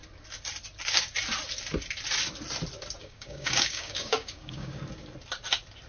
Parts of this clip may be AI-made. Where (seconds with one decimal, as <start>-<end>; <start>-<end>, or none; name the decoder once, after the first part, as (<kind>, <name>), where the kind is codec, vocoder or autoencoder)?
3.0-4.8 (codec, DAC)